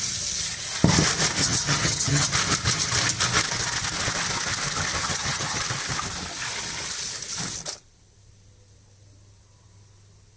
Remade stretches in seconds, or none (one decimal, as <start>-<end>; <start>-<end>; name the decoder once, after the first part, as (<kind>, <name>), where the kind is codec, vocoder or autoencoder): 1.4-2.3 (vocoder, HiFi-GAN); 5.0-5.6